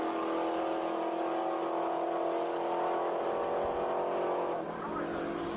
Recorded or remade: recorded